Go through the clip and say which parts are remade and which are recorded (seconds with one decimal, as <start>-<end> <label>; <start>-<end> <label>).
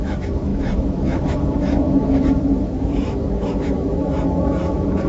0.0-5.1 remade